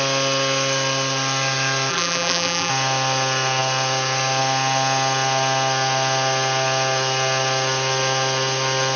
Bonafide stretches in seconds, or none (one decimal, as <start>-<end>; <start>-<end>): 0.0-1.9; 2.7-9.0